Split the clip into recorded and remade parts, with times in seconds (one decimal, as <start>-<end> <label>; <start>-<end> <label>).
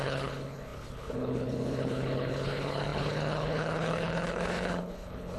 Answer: 0.0-5.4 remade